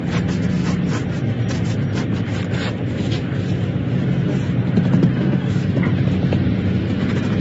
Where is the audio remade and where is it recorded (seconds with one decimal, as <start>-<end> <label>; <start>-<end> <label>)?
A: 0.0-5.0 recorded; 5.0-5.7 remade; 5.7-7.4 recorded